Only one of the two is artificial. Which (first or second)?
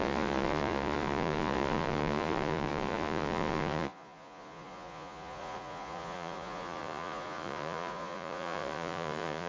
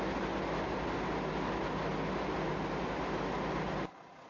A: first